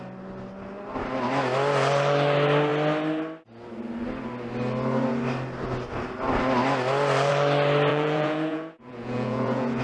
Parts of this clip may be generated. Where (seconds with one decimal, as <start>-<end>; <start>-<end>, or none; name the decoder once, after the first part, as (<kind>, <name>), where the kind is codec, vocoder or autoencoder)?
7.9-9.8 (vocoder, Vocos)